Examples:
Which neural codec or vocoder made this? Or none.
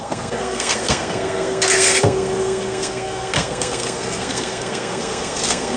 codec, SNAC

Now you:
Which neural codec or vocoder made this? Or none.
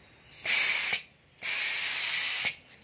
none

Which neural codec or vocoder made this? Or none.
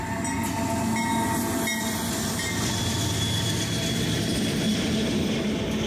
none